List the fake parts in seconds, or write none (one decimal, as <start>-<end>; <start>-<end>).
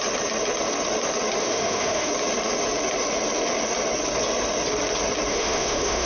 1.4-2.1; 5.3-6.1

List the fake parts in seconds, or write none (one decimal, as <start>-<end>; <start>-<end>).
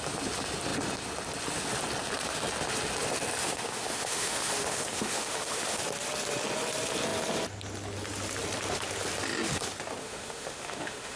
3.4-5.8; 10.0-11.2